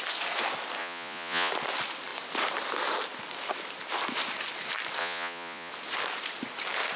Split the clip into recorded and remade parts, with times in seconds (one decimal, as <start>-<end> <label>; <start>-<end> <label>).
0.0-0.8 recorded; 0.8-1.5 remade; 1.5-5.0 recorded; 5.0-5.7 remade; 5.7-7.0 recorded